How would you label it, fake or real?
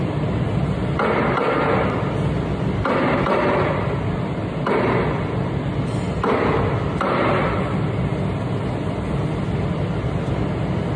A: real